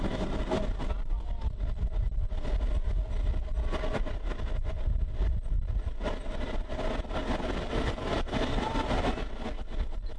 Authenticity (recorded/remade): recorded